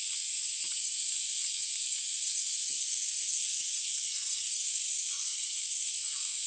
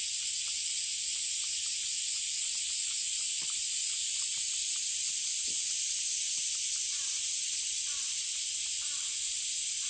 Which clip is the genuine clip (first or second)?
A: second